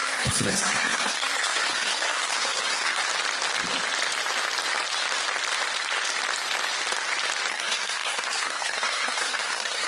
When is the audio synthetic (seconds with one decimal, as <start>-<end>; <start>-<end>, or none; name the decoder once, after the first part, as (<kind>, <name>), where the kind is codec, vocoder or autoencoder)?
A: 0.0-3.0 (codec, SNAC); 7.5-9.9